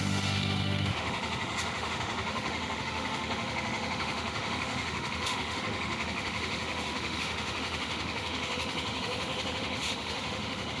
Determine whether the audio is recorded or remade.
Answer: remade